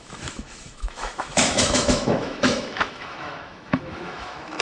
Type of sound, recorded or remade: remade